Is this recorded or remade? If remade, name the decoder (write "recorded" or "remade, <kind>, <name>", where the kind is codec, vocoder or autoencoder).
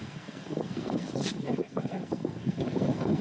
remade, codec, SNAC